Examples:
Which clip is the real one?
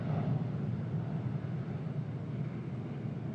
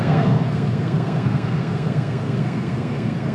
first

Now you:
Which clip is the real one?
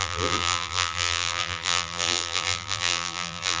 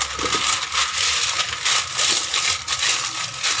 second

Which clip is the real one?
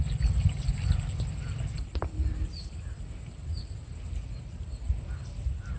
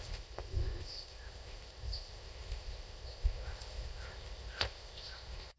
first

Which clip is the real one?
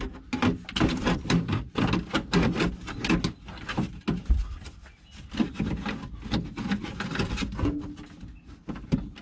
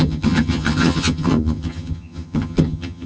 first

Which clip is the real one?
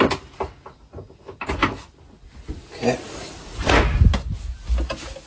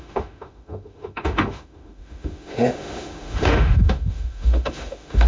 first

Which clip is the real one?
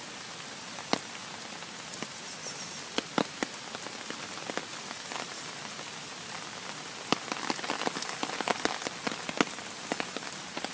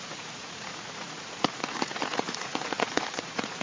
first